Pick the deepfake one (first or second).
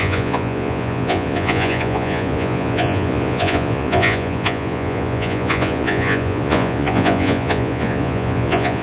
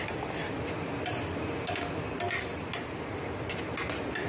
first